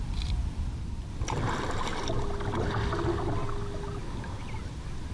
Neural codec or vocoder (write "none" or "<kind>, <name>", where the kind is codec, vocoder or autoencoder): none